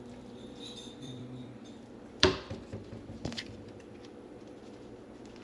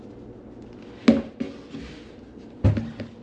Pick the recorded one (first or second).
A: second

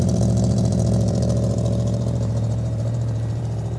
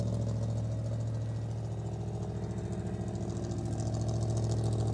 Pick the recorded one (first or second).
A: second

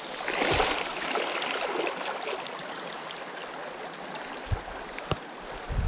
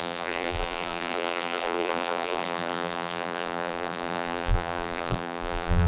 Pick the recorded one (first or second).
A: first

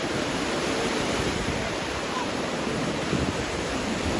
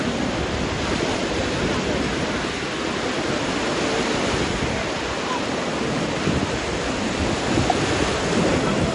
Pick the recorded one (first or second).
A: second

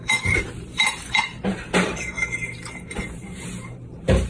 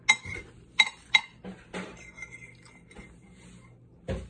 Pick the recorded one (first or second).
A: second